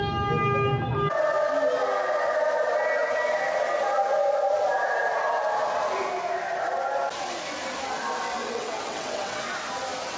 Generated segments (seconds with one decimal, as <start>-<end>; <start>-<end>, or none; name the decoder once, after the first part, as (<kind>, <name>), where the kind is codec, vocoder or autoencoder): 8.4-9.4 (vocoder, WaveNeXt)